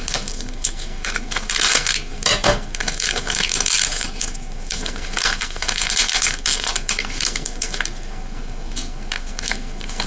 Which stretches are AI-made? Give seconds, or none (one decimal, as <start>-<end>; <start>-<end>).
0.0-10.1